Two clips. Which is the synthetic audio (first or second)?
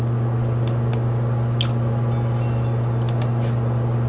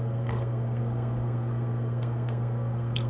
second